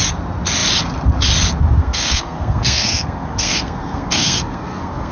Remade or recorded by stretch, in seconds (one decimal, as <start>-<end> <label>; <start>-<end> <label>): 0.0-1.8 recorded; 1.8-5.1 remade